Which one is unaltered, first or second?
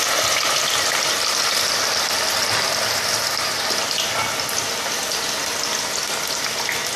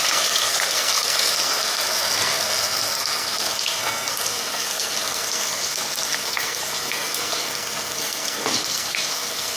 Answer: first